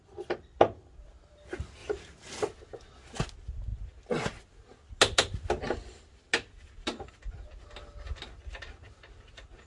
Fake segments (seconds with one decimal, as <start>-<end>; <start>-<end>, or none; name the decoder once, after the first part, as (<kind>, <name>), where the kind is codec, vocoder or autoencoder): none